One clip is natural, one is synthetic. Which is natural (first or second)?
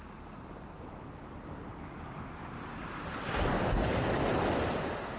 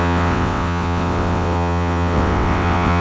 first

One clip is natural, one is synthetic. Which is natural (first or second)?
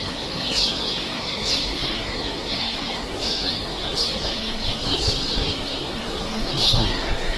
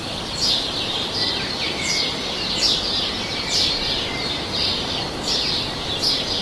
second